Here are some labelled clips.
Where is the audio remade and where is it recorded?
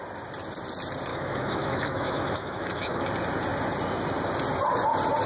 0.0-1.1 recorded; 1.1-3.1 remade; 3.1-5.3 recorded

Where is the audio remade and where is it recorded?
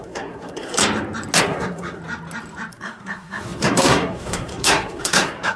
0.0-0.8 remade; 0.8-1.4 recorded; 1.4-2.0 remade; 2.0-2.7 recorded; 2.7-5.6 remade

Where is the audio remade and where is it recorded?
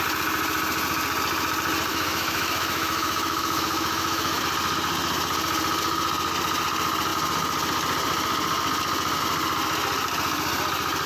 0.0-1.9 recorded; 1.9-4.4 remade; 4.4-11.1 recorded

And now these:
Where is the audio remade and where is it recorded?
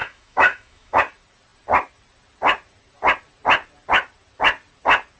0.0-1.0 remade; 1.0-5.2 recorded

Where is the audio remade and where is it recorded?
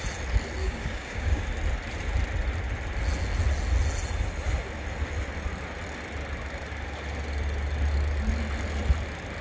0.0-0.6 recorded; 0.6-1.4 remade; 1.4-9.4 recorded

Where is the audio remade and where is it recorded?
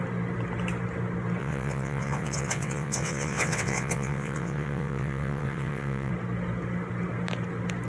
0.0-1.4 recorded; 1.4-6.1 remade; 6.1-7.9 recorded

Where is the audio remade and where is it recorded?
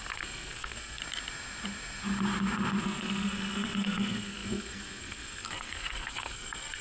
0.0-1.0 remade; 1.0-2.8 recorded; 2.8-6.8 remade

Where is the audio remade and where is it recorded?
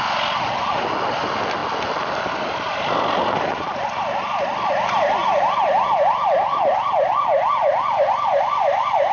0.0-1.6 remade; 1.6-4.7 recorded; 4.7-9.1 remade